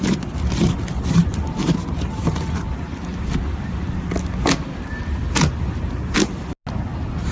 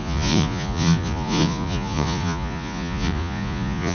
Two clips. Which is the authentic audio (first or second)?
first